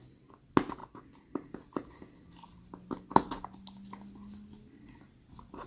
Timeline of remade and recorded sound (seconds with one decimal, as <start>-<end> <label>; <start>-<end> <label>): 0.0-5.7 recorded

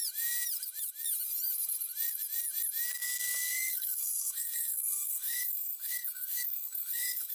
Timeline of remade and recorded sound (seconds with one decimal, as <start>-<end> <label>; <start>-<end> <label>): 0.0-3.0 recorded; 3.0-7.3 remade